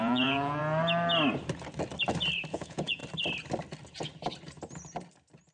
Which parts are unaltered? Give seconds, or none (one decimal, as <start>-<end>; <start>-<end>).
0.6-2.5; 3.0-5.5